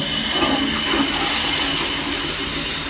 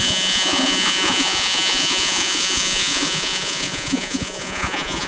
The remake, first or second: second